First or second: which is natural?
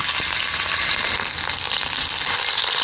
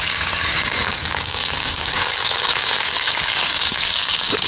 first